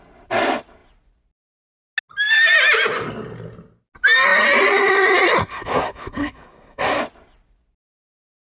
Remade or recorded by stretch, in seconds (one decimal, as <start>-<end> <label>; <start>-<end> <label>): 0.0-5.4 recorded; 5.4-7.0 remade; 7.0-8.4 recorded

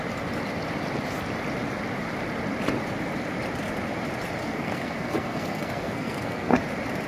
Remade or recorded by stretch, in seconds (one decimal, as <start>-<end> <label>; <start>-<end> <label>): 0.0-4.4 recorded; 4.4-6.6 remade; 6.6-7.1 recorded

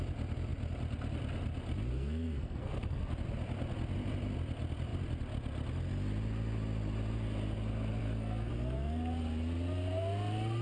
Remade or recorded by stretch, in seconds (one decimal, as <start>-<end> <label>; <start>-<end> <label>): 0.0-1.9 recorded; 1.9-3.1 remade; 3.1-8.0 recorded; 8.0-8.5 remade; 8.5-10.6 recorded

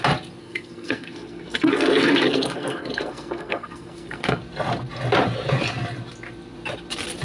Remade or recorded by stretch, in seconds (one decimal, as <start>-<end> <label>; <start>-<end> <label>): 0.0-0.4 recorded; 0.4-4.4 remade; 4.4-7.2 recorded

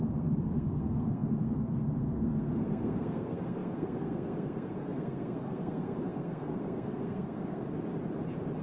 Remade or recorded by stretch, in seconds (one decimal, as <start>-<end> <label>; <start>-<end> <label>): 0.0-7.6 remade; 7.6-8.6 recorded